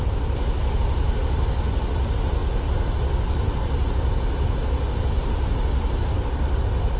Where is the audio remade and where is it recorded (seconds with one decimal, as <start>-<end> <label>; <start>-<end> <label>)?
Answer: 0.0-7.0 recorded